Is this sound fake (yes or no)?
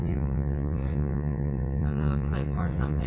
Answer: yes